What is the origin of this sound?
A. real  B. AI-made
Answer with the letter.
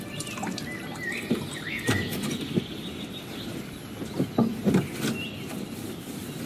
A